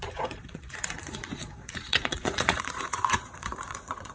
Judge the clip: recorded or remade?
remade